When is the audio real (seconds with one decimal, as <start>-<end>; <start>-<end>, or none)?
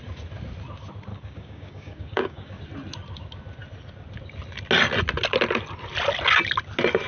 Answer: 0.0-1.1; 2.6-7.1